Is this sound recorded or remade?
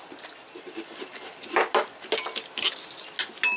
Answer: recorded